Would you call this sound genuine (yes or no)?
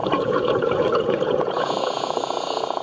no